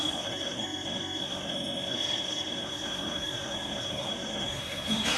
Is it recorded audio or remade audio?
remade